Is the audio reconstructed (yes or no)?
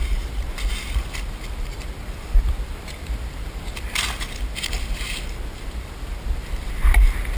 no